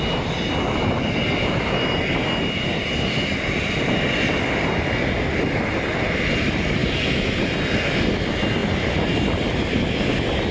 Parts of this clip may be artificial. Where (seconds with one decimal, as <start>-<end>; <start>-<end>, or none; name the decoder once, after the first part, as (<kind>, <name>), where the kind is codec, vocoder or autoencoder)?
none